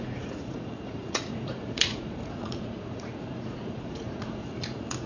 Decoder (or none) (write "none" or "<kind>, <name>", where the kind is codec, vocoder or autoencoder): vocoder, Vocos